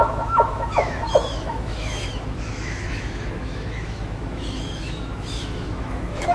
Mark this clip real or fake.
fake